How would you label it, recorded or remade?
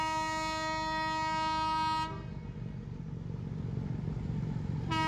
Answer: recorded